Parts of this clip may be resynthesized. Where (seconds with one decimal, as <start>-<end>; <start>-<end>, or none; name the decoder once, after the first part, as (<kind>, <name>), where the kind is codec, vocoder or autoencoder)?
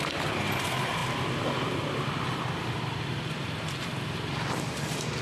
none